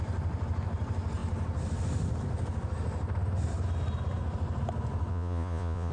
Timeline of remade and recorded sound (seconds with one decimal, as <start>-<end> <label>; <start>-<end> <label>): 0.0-5.1 recorded; 5.1-5.9 remade